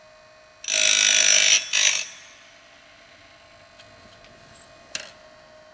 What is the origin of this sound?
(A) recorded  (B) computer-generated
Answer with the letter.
A